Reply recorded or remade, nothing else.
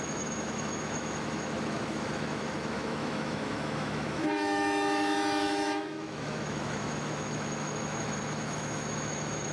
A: remade